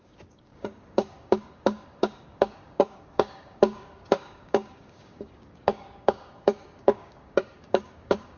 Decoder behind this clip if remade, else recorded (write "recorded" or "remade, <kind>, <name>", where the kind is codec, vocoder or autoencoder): remade, codec, DAC